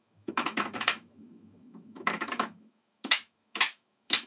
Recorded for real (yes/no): no